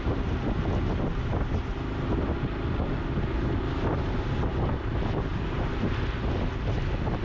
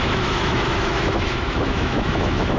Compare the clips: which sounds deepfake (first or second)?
second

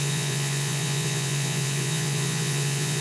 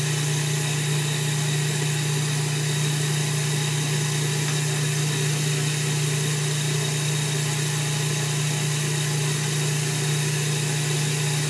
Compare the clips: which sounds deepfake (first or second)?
first